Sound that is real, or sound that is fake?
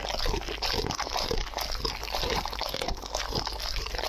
real